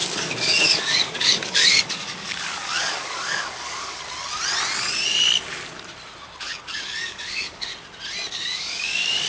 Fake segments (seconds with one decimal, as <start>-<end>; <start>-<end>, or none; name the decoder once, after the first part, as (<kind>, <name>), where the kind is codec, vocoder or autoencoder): 0.0-4.0 (codec, DAC); 6.4-7.7; 8.3-9.3